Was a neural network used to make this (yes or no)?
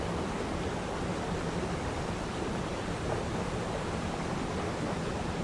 no